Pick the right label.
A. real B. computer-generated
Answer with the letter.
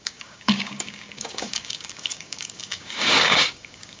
B